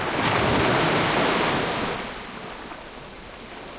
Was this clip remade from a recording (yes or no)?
no